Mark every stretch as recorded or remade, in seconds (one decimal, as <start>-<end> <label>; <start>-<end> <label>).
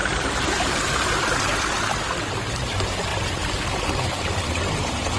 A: 0.0-3.1 remade; 3.1-4.3 recorded; 4.3-5.2 remade